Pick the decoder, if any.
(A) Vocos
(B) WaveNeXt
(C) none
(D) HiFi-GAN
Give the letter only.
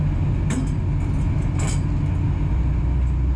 C